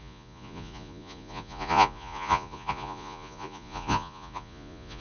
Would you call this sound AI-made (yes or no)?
yes